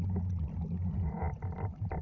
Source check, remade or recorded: recorded